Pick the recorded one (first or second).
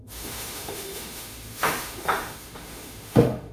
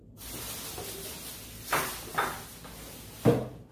second